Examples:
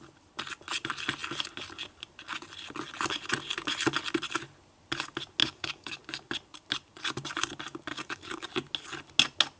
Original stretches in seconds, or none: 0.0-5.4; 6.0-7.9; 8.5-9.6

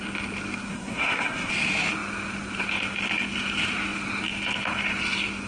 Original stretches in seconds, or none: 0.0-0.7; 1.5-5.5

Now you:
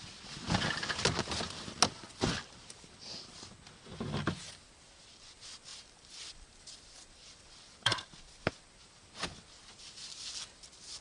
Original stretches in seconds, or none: 0.0-5.7; 8.6-11.0

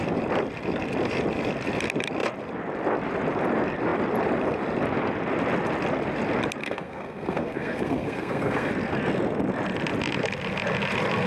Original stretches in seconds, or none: 0.0-6.6; 8.7-11.3

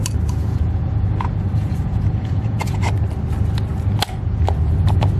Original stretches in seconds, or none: 0.0-0.4; 2.8-5.2

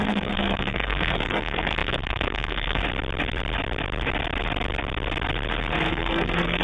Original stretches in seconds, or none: 2.8-5.9

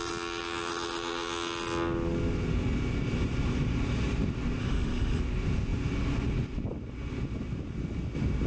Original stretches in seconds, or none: 0.0-4.6; 5.2-8.5

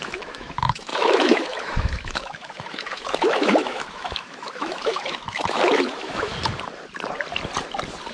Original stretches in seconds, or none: 6.3-8.1